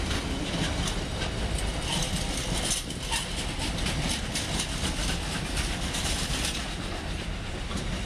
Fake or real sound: real